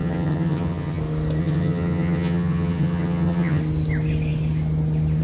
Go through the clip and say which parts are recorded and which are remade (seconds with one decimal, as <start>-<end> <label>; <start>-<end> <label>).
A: 0.0-1.0 remade; 1.0-1.4 recorded; 1.4-3.6 remade; 3.6-5.2 recorded